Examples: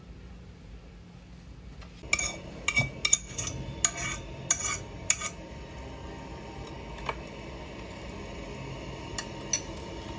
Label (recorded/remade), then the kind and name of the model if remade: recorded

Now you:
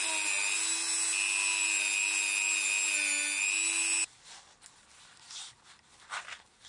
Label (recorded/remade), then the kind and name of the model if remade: recorded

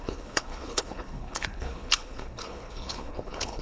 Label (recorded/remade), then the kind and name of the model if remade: remade, codec, HILCodec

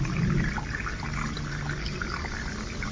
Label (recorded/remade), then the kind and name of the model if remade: recorded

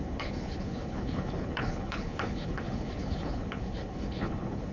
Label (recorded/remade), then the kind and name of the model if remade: remade, codec, HILCodec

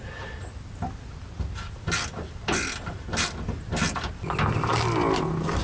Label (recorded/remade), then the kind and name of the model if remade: recorded